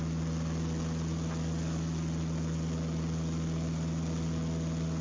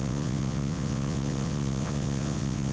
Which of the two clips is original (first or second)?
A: first